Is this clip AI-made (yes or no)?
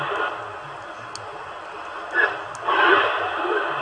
no